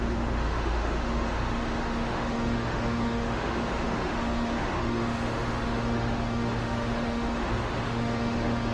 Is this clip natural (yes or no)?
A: no